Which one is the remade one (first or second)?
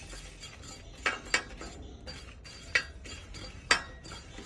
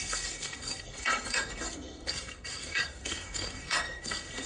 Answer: second